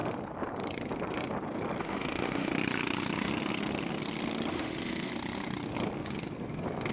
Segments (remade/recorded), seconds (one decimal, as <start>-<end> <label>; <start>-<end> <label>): 0.0-1.8 recorded; 1.8-2.5 remade; 2.5-4.5 recorded; 4.5-5.1 remade; 5.1-6.9 recorded